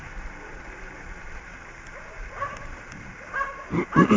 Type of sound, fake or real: real